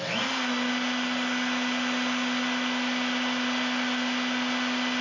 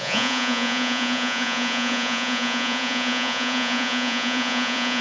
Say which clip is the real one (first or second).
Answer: first